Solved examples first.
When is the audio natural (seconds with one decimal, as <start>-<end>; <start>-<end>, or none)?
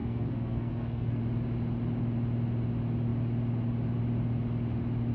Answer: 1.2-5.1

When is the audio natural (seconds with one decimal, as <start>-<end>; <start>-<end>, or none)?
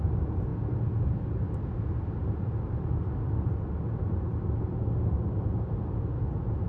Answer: 0.0-6.7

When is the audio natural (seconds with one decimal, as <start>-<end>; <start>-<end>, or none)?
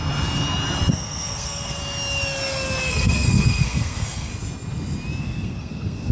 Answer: 0.0-0.9; 1.8-2.9; 4.3-5.2